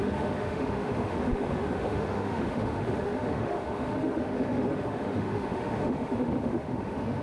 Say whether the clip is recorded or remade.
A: remade